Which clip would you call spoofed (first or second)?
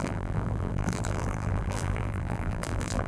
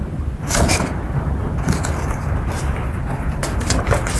first